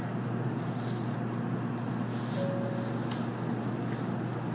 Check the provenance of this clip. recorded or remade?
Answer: recorded